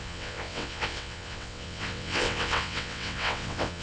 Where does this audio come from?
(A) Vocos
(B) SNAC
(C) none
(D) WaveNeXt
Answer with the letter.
D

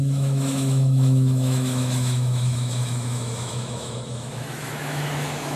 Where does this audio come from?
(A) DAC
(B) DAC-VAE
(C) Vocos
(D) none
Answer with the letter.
B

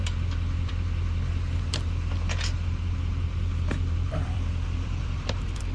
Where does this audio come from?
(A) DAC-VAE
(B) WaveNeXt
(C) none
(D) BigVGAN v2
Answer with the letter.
D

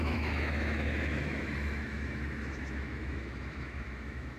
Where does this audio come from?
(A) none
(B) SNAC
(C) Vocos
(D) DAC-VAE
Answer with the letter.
D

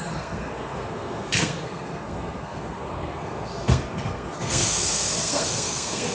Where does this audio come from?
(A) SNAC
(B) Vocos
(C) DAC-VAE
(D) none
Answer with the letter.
A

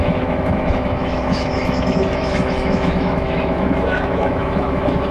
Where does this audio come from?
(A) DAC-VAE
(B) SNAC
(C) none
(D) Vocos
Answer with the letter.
A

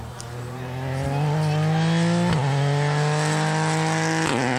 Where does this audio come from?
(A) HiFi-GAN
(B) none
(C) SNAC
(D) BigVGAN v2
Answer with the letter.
B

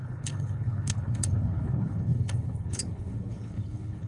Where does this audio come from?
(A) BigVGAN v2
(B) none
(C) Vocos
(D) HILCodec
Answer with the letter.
D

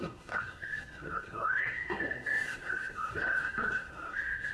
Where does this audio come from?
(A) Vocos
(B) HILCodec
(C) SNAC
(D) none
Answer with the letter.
C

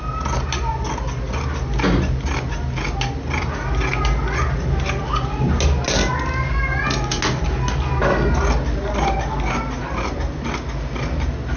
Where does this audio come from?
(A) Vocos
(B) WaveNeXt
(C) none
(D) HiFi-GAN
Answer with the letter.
C